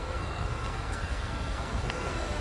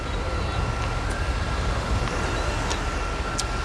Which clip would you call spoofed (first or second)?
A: first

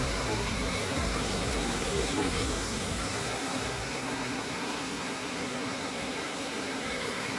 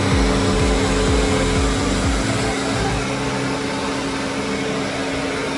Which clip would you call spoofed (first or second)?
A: first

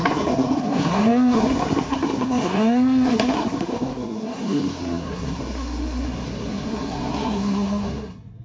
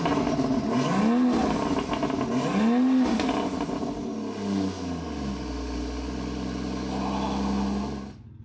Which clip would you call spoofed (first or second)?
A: first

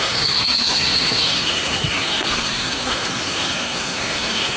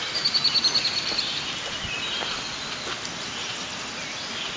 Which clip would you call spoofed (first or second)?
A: first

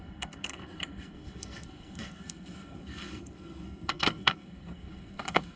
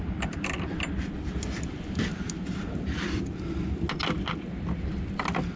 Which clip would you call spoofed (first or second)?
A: first